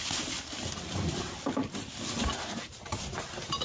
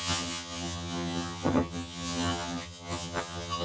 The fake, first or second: second